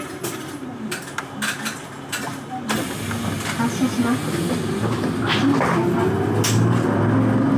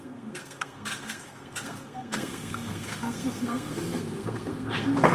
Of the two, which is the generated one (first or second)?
second